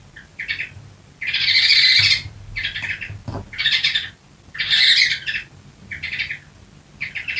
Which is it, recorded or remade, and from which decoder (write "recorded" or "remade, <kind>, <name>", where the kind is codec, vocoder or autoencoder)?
recorded